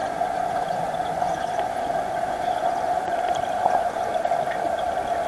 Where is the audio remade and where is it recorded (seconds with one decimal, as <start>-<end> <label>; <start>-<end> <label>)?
0.0-3.2 remade; 3.2-3.6 recorded; 3.6-4.1 remade; 4.1-5.3 recorded